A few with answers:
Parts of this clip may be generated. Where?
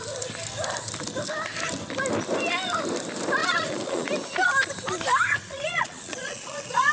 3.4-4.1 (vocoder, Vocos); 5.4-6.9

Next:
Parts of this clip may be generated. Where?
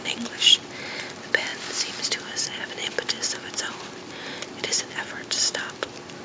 none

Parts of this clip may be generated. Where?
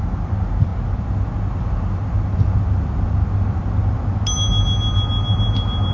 none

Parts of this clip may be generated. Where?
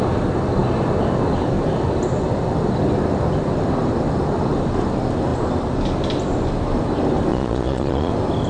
7.3-8.1 (vocoder, Vocos)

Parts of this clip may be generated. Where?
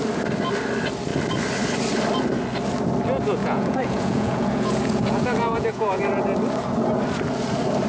3.4-6.0 (vocoder, Vocos)